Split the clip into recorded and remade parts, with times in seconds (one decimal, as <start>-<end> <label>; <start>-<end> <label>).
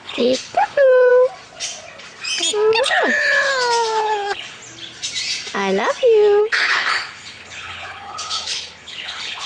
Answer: 0.0-1.1 remade; 1.1-2.8 recorded; 2.8-3.5 remade; 3.5-4.0 recorded; 4.0-4.6 remade; 4.6-6.4 recorded; 6.4-9.5 remade